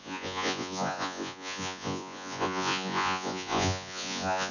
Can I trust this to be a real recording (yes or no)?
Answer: no